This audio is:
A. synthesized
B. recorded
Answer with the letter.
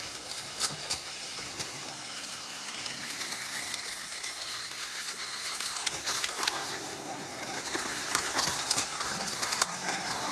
A